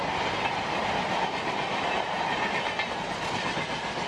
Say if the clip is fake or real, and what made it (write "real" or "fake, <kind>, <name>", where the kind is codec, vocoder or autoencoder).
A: real